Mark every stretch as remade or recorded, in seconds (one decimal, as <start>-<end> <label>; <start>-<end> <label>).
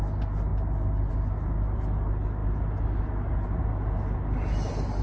0.0-5.0 recorded